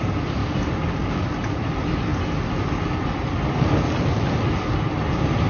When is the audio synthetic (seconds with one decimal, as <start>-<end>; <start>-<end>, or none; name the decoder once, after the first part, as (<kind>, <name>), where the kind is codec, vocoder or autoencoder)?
none